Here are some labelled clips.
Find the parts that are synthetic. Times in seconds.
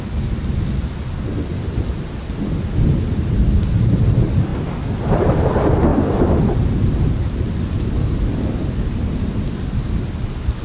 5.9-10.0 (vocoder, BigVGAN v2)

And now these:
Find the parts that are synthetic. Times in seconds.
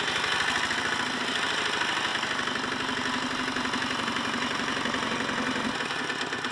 none